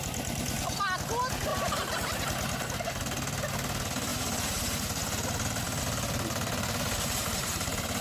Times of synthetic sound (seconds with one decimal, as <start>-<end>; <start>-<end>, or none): none